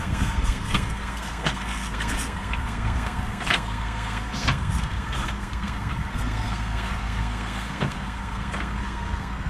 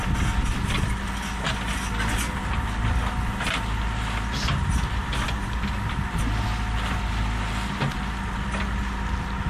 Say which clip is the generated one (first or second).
first